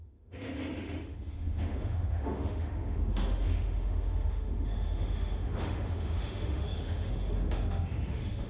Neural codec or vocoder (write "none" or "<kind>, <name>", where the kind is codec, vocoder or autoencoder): autoencoder, DAC-VAE